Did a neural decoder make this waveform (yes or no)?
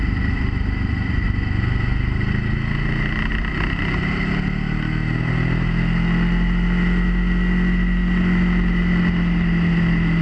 no